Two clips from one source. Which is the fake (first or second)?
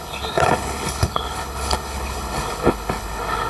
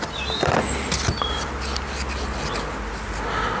first